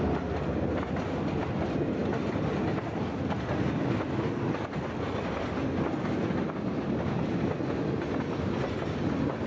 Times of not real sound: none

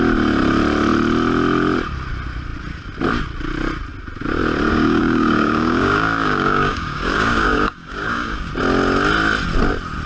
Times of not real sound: 4.7-8.5 (codec, DAC)

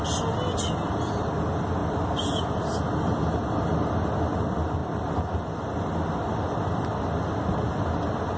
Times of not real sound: none

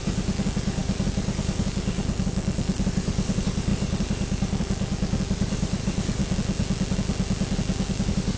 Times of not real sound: 0.0-6.2 (codec, DAC); 7.9-8.4

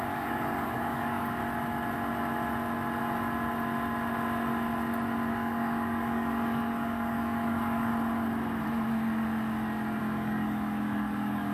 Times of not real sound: 0.0-1.4 (codec, DAC); 5.3-7.9; 10.0-11.5

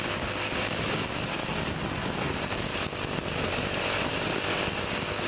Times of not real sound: 0.0-1.4 (codec, DAC); 2.2-2.7; 4.1-5.3

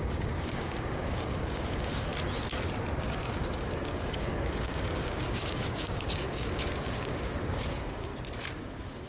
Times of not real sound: 0.0-2.1 (codec, DAC); 3.0-8.1; 8.6-9.1

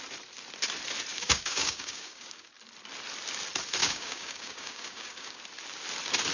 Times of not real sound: 1.1-2.5 (codec, DAC); 3.8-5.4